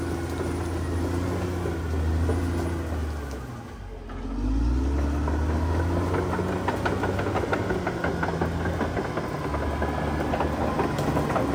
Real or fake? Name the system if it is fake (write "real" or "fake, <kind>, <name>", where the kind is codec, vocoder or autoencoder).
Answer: real